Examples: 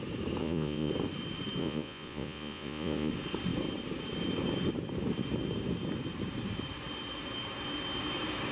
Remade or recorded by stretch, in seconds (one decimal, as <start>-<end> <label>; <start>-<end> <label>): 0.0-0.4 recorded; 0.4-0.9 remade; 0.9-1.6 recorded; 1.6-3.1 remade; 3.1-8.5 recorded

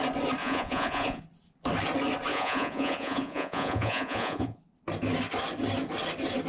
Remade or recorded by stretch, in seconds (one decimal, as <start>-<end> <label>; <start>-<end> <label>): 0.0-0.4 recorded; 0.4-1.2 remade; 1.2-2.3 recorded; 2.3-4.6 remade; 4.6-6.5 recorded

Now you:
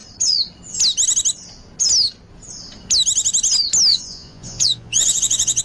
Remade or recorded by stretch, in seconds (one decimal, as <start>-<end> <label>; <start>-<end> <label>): 0.0-3.9 recorded; 3.9-5.6 remade

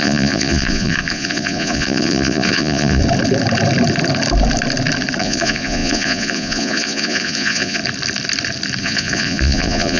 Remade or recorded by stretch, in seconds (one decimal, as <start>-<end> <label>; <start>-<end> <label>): 0.0-3.0 remade; 3.0-5.2 recorded; 5.2-7.8 remade; 7.8-8.8 recorded; 8.8-10.0 remade

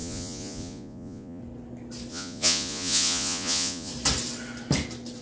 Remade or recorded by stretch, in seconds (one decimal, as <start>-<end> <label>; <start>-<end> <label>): 0.0-1.4 remade; 1.4-2.1 recorded; 2.1-3.9 remade; 3.9-5.2 recorded